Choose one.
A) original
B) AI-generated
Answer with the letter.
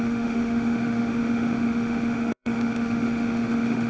B